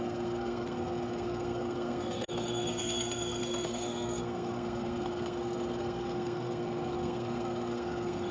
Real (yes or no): no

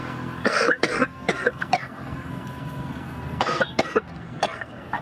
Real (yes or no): no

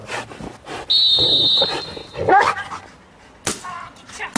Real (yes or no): yes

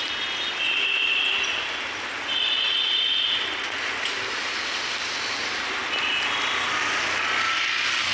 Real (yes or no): yes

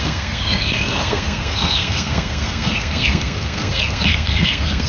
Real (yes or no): no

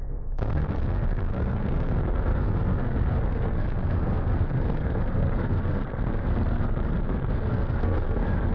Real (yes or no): no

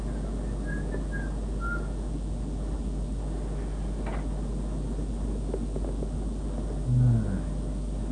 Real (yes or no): yes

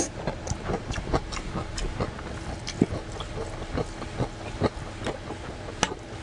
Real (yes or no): yes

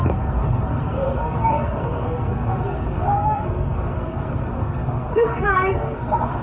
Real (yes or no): no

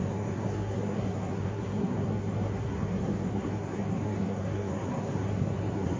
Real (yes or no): no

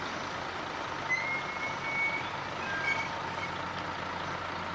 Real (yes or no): yes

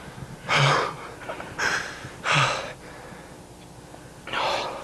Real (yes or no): yes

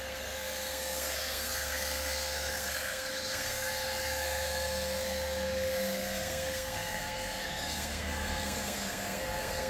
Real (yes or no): no